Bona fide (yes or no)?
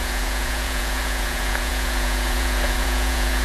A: no